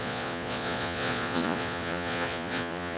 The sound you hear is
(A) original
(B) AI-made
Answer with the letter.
B